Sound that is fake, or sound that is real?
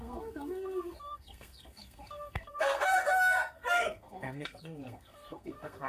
fake